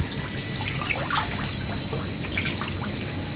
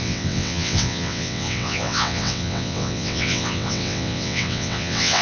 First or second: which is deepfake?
second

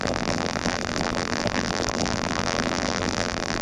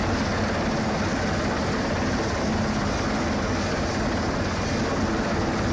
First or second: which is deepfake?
first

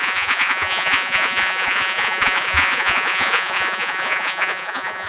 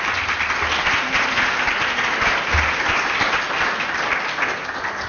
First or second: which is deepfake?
first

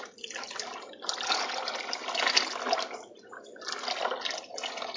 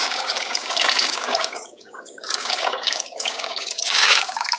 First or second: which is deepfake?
second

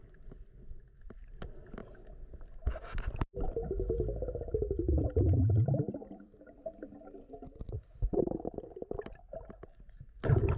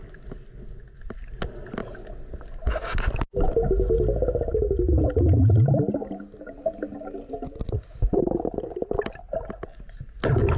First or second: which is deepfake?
first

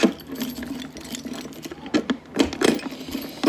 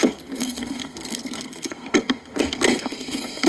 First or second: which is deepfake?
second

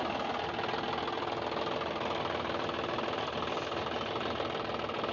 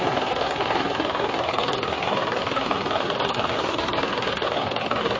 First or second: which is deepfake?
second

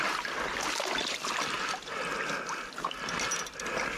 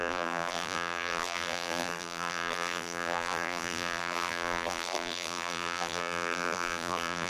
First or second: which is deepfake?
second